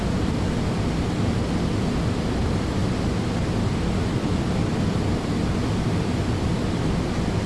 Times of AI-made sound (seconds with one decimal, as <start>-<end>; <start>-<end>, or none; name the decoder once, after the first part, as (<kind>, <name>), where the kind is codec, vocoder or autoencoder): none